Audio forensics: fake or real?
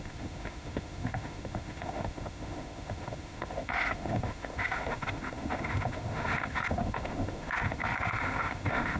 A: fake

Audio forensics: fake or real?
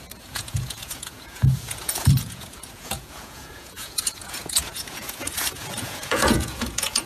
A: fake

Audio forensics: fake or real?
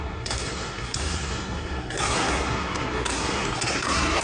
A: fake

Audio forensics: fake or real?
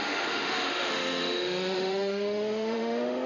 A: fake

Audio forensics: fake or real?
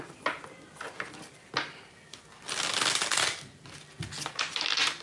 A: real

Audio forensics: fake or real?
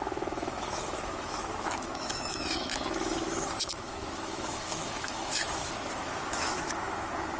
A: fake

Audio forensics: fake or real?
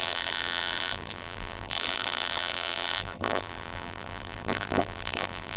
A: fake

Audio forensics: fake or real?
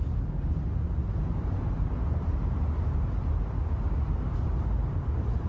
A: real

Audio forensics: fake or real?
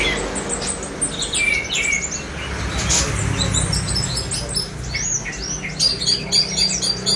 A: real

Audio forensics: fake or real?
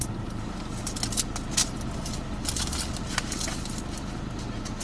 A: real